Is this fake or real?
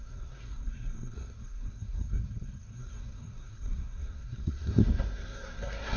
fake